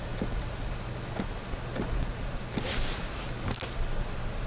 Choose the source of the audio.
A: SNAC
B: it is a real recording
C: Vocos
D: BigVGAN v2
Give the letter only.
B